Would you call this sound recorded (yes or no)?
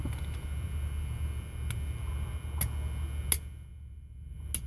yes